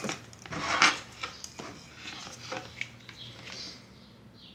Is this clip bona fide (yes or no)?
yes